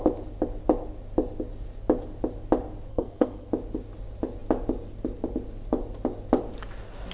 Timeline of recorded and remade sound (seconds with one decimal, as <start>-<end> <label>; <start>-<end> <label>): 0.0-2.9 recorded; 2.9-3.5 remade; 3.5-7.1 recorded